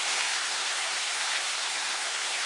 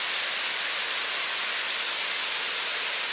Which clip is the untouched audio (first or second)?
second